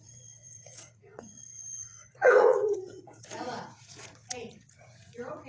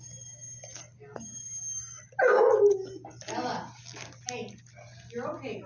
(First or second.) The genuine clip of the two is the second